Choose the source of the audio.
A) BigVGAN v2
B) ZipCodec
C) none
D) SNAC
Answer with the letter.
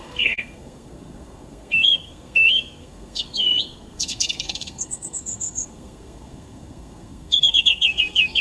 D